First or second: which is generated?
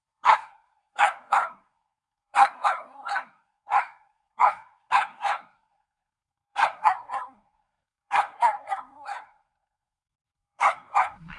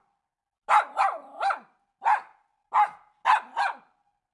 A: first